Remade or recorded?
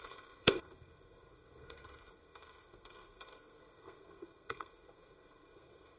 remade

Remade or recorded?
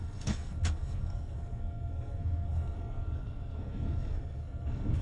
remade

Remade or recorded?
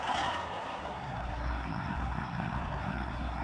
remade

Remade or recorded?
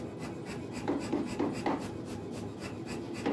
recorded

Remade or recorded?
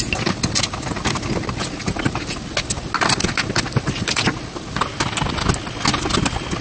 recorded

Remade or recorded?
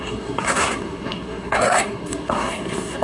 remade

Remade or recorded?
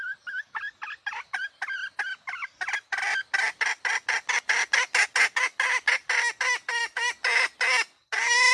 recorded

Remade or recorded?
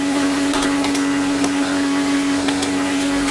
remade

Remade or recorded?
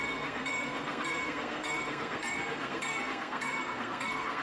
remade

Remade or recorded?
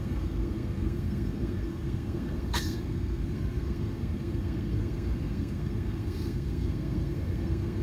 remade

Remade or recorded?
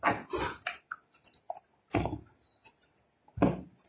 recorded